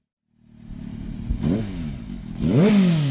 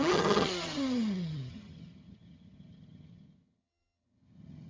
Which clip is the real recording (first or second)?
first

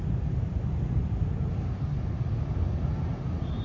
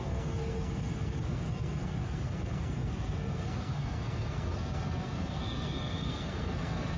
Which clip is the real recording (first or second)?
first